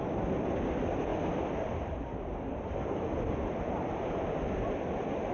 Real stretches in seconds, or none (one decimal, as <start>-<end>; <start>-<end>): 0.0-5.3